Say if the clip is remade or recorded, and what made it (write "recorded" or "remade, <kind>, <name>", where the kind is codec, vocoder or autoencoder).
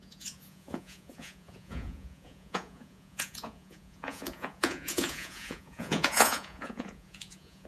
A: remade, vocoder, Vocos